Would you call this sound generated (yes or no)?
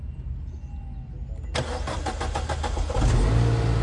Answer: no